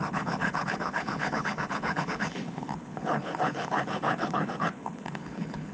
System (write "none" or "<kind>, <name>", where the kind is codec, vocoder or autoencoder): codec, HILCodec